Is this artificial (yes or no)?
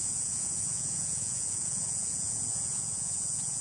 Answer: yes